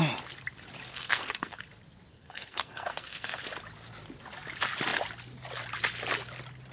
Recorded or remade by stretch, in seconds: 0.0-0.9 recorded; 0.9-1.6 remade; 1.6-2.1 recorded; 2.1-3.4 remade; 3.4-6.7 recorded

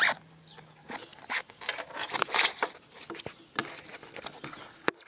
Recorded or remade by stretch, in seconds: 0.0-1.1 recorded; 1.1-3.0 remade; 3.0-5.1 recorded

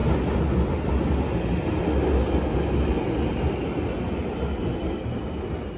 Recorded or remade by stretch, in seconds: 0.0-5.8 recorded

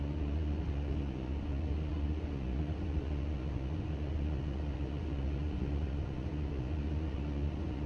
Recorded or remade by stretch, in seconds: 0.0-7.9 remade

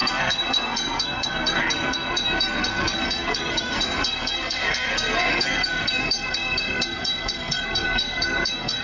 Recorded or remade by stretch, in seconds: 0.0-8.8 remade

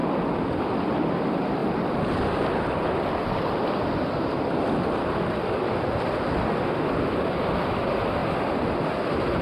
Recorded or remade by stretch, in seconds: 0.0-0.6 recorded; 0.6-1.6 remade; 1.6-6.7 recorded; 6.7-8.2 remade; 8.2-9.4 recorded

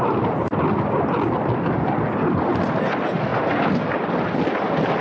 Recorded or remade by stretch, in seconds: 0.0-5.0 recorded

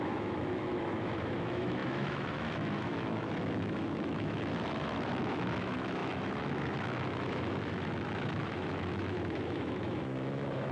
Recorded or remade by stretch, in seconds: 0.0-10.7 remade